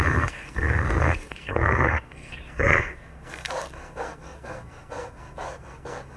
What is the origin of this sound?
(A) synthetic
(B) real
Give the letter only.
A